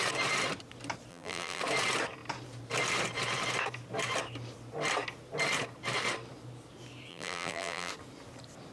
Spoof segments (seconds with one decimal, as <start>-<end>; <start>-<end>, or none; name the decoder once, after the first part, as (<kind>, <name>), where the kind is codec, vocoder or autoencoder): 1.1-1.6 (vocoder, BigVGAN v2); 7.1-7.9